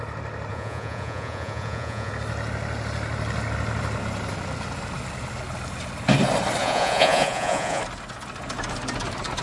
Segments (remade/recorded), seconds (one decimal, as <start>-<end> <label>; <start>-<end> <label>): 0.0-0.5 recorded; 0.5-2.1 remade; 2.1-6.6 recorded; 6.6-7.8 remade; 7.8-9.4 recorded